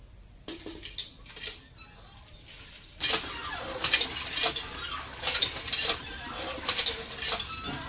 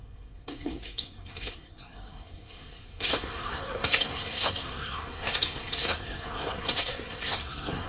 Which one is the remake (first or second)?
second